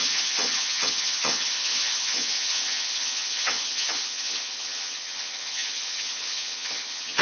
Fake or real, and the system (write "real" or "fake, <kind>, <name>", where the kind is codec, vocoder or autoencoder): fake, vocoder, HiFi-GAN